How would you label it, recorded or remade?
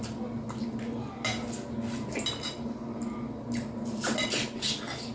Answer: recorded